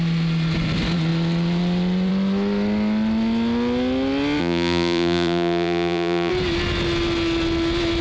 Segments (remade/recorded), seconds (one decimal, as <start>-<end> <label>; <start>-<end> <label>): 0.0-4.4 recorded; 4.4-6.3 remade; 6.3-8.0 recorded